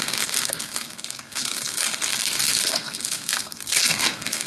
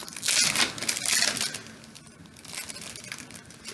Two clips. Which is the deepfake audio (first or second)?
first